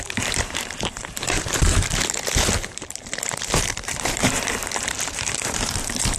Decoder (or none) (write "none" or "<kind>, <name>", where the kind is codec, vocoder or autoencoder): vocoder, BigVGAN v2